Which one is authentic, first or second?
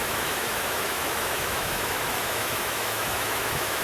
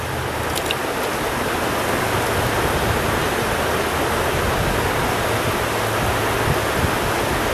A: second